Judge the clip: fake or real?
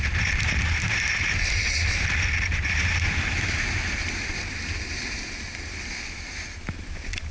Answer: real